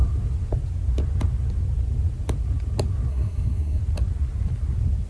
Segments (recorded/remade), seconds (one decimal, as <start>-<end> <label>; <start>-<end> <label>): 0.0-3.1 recorded; 3.1-3.8 remade; 3.8-5.1 recorded